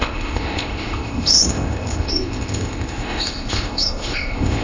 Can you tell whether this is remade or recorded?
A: remade